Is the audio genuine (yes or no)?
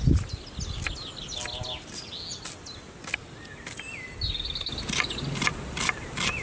yes